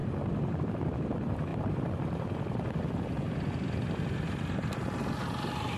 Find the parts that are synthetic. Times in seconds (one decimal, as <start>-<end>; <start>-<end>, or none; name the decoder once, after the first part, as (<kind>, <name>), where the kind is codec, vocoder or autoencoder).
1.5-5.0 (vocoder, BigVGAN v2)